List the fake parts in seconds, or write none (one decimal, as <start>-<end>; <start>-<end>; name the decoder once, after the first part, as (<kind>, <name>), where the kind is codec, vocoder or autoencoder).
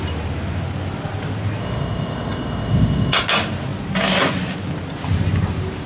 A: 1.6-3.2 (codec, ZipCodec)